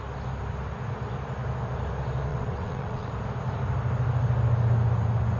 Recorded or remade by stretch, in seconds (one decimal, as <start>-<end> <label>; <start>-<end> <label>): 0.0-2.3 recorded; 2.3-3.1 remade; 3.1-5.4 recorded